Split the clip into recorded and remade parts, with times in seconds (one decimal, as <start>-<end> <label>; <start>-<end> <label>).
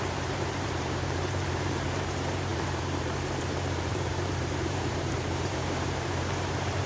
0.0-6.9 remade